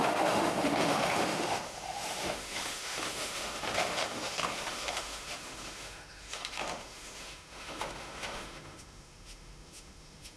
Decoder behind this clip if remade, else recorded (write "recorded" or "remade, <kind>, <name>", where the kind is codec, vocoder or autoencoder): remade, autoencoder, DAC-VAE